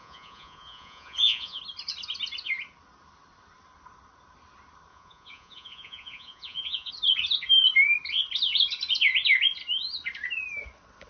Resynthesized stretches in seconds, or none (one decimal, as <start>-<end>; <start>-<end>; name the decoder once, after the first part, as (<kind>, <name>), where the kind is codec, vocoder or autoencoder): 0.0-1.6 (vocoder, Vocos); 4.9-6.9